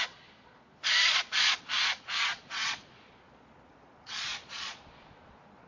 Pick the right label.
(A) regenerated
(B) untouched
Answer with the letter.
A